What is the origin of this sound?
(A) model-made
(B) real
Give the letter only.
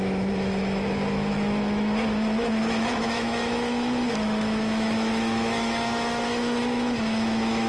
A